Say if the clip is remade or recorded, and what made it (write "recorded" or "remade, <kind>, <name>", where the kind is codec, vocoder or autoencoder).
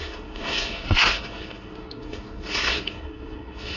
remade, codec, SNAC